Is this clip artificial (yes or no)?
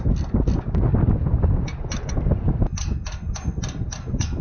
no